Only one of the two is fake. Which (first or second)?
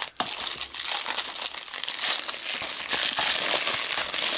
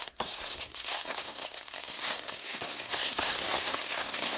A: second